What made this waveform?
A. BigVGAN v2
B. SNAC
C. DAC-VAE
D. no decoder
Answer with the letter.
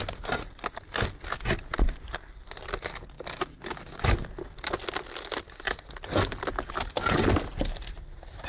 D